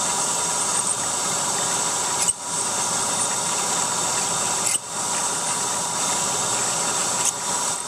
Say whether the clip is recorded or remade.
recorded